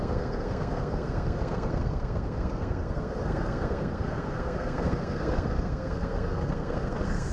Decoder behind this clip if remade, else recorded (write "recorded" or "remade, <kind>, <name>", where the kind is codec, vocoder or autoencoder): remade, codec, SNAC